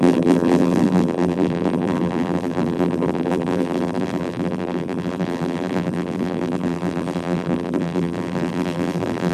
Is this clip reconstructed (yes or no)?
yes